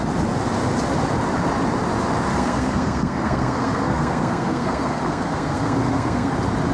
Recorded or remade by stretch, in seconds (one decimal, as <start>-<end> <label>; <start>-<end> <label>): 0.0-2.3 recorded; 2.3-6.3 remade; 6.3-6.7 recorded